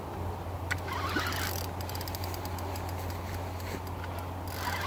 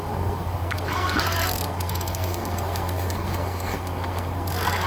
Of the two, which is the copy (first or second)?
second